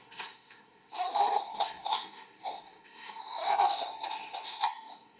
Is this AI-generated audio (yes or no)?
yes